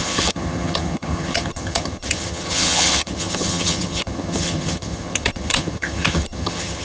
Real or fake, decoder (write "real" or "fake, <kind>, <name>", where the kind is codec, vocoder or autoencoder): fake, vocoder, HiFi-GAN